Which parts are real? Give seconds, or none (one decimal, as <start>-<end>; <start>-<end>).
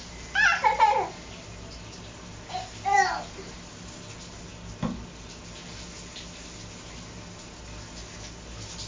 0.0-8.9